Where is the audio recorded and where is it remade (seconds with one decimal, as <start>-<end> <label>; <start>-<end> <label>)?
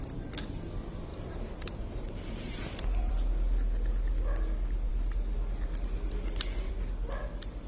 0.0-1.1 recorded; 1.1-3.1 remade; 3.1-7.7 recorded